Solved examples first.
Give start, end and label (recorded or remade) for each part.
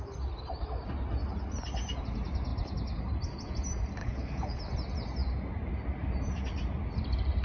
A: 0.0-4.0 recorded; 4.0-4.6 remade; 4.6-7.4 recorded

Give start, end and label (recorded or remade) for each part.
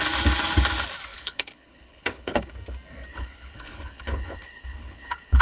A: 0.0-1.1 recorded; 1.1-2.5 remade; 2.5-3.1 recorded; 3.1-5.4 remade